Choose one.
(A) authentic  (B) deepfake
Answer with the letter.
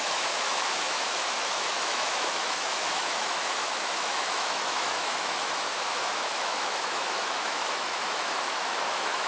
B